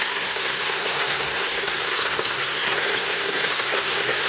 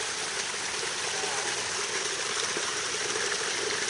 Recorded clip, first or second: second